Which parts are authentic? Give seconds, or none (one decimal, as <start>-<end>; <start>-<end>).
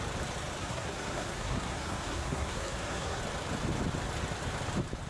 0.0-0.6; 3.2-5.1